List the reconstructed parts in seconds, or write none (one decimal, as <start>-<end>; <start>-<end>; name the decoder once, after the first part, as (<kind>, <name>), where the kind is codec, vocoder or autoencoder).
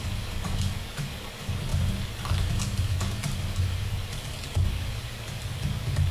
0.0-6.1 (codec, DAC)